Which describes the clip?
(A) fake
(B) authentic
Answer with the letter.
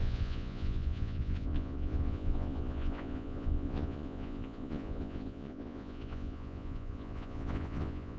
A